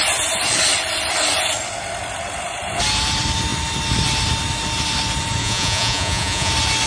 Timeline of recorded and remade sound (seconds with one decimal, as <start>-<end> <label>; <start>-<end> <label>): 0.0-5.4 recorded; 5.4-6.5 remade; 6.5-6.9 recorded